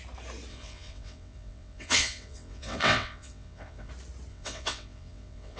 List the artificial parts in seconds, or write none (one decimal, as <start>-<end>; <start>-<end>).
0.5-3.9; 4.3-5.6